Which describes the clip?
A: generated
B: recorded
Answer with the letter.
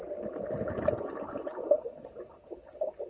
B